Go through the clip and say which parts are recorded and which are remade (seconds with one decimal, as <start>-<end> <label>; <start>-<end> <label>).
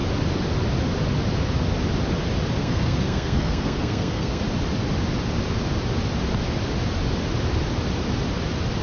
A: 0.0-2.6 recorded; 2.6-4.4 remade; 4.4-8.8 recorded